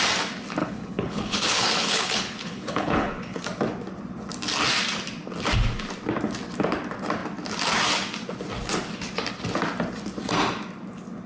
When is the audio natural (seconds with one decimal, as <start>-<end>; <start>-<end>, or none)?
0.0-0.6; 3.4-11.3